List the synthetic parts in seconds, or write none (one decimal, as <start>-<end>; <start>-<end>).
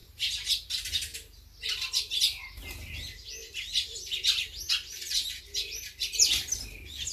0.0-0.5; 3.4-5.4